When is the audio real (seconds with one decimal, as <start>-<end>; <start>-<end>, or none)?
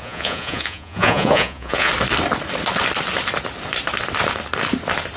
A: 1.9-5.2